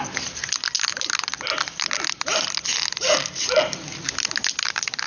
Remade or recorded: recorded